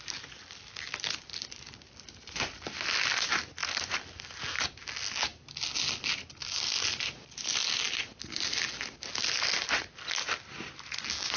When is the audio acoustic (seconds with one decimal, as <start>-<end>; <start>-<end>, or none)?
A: 0.0-11.4